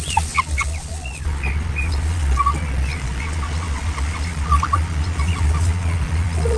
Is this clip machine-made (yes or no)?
yes